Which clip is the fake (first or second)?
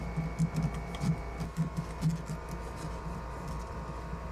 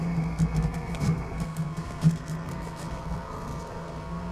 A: second